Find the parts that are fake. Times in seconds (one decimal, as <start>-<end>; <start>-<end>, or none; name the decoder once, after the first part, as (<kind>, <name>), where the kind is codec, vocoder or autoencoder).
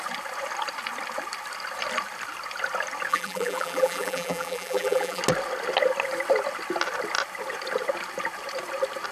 3.1-5.2 (vocoder, BigVGAN v2)